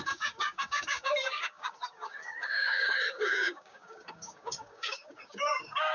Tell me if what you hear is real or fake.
fake